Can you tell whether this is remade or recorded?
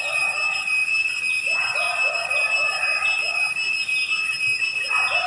recorded